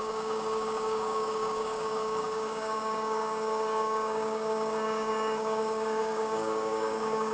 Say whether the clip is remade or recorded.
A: remade